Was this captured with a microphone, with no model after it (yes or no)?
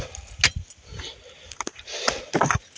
yes